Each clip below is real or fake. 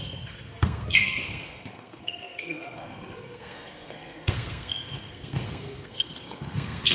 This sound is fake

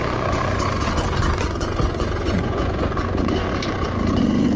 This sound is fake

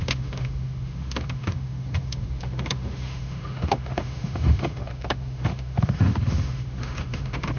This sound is fake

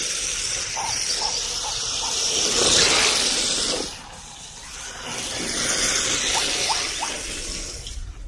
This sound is real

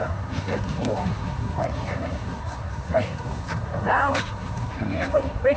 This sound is fake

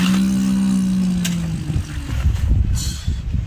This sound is real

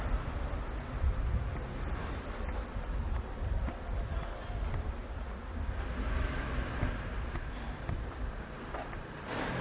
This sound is real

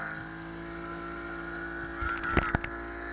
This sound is real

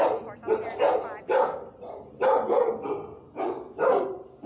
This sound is real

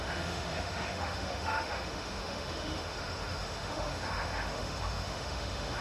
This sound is fake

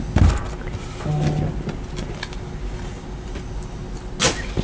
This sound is real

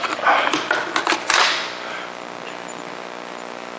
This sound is real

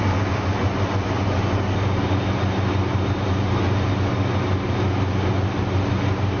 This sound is real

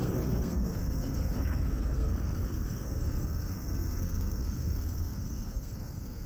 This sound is fake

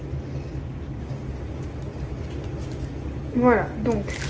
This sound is real